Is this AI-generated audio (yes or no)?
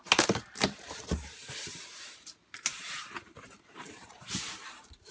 yes